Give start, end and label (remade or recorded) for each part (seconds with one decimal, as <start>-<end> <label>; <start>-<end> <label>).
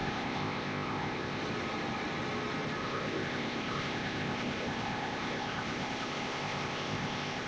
0.0-1.4 remade; 1.4-2.8 recorded; 2.8-7.5 remade